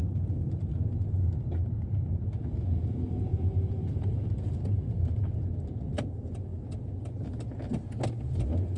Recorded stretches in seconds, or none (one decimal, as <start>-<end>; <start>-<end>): 0.0-1.6; 2.6-3.3; 5.3-8.8